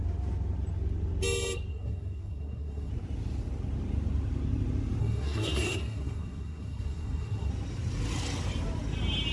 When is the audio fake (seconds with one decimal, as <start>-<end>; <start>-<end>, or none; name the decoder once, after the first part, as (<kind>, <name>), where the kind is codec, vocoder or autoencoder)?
1.7-2.9 (codec, SNAC); 5.0-7.5